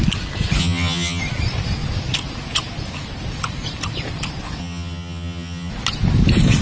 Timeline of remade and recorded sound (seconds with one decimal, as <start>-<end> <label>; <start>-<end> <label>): 0.0-0.6 recorded; 0.6-1.2 remade; 1.2-4.6 recorded; 4.6-5.7 remade; 5.7-6.6 recorded